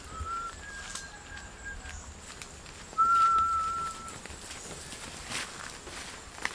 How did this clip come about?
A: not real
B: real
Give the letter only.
B